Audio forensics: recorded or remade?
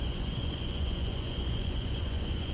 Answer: remade